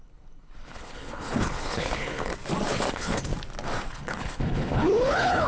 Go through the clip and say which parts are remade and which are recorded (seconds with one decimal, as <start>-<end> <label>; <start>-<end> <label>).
0.0-2.3 remade; 2.3-2.9 recorded; 2.9-3.3 remade; 3.3-3.8 recorded; 3.8-5.5 remade